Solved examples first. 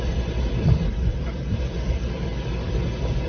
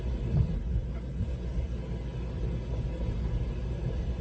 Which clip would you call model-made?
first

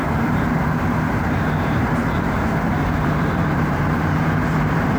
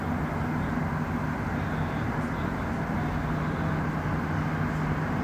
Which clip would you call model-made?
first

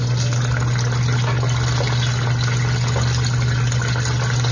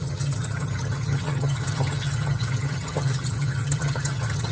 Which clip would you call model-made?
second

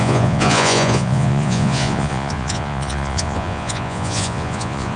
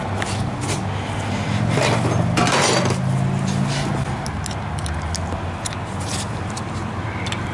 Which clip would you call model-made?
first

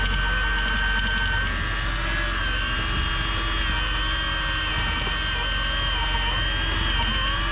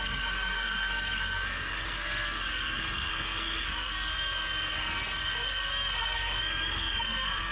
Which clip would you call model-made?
second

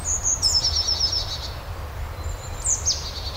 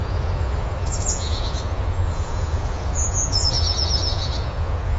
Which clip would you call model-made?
second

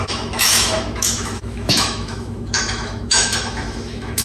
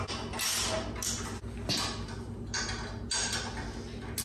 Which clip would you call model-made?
first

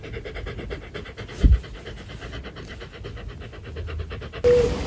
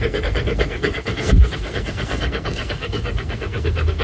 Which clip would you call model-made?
second